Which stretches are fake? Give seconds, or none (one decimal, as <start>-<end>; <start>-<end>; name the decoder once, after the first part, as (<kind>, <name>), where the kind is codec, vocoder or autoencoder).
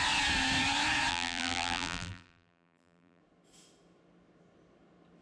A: 1.1-3.2 (vocoder, BigVGAN v2)